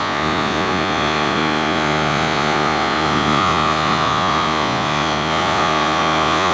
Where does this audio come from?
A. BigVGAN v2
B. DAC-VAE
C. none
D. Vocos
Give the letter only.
D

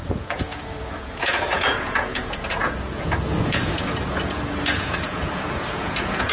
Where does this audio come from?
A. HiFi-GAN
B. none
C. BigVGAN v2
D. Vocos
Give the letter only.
D